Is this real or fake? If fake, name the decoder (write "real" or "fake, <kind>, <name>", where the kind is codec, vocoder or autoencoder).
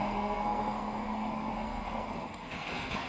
fake, codec, SNAC